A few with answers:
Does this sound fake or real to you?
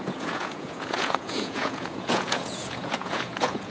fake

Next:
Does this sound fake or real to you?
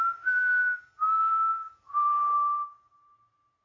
real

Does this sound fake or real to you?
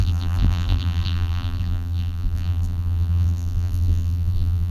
fake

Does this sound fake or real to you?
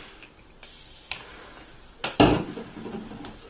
real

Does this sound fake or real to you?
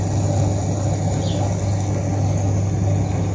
real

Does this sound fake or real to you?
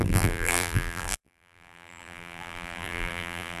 fake